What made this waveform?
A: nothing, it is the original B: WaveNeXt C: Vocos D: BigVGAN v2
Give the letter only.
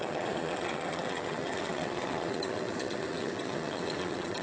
B